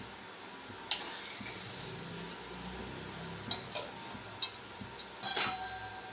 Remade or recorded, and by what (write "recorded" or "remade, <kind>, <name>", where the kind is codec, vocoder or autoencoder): recorded